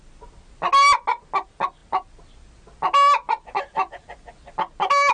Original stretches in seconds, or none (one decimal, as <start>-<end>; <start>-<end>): 0.0-5.1